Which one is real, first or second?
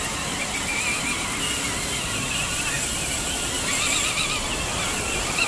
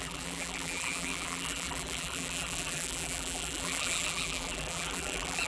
first